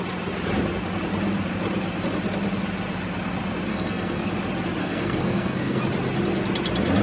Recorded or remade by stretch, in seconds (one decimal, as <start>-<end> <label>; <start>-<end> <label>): 0.0-3.7 recorded; 3.7-4.3 remade; 4.3-4.8 recorded; 4.8-5.8 remade; 5.8-7.0 recorded